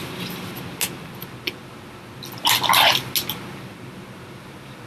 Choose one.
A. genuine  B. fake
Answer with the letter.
A